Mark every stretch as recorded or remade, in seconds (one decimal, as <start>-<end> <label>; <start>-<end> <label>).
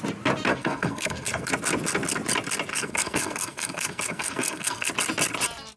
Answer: 0.0-0.5 recorded; 0.5-1.5 remade; 1.5-2.7 recorded; 2.7-4.9 remade; 4.9-5.8 recorded